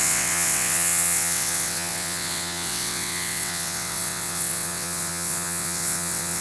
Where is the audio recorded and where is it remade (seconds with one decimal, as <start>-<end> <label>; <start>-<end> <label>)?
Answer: 0.0-6.4 remade